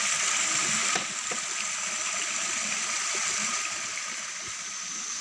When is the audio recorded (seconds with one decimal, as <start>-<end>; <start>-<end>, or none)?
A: 0.0-5.2